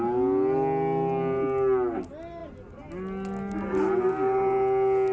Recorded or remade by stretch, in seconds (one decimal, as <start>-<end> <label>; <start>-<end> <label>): 0.0-5.1 recorded